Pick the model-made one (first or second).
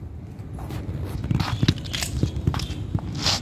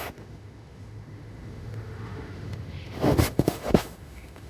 second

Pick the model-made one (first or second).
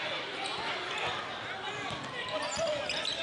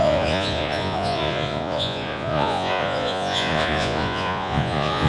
second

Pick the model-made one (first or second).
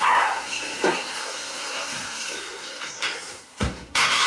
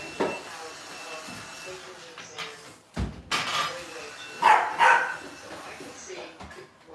first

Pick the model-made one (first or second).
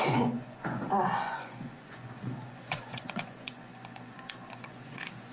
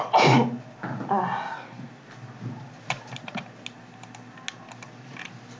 first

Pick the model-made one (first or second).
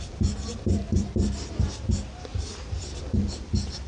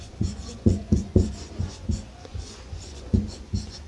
second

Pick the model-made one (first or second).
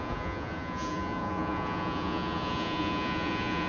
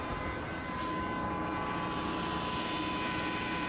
first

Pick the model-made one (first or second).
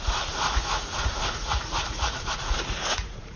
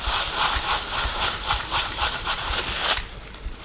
first